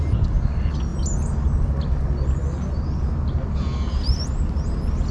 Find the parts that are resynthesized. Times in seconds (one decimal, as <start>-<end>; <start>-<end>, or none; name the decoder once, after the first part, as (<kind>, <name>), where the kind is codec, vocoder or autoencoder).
none